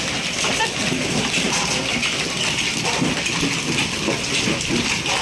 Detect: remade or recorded recorded